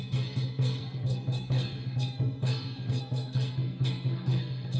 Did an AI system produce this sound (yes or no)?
yes